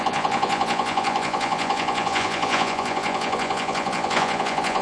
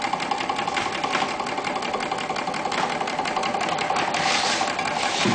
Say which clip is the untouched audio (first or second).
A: second